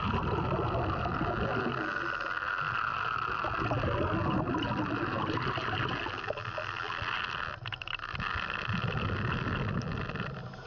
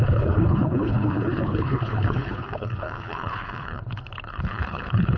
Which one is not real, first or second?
second